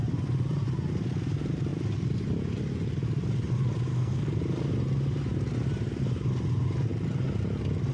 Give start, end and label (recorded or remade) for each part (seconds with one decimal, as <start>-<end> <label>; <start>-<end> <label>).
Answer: 0.0-3.9 recorded; 3.9-4.4 remade; 4.4-7.9 recorded